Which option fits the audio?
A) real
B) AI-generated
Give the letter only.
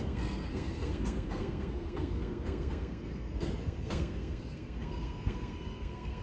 B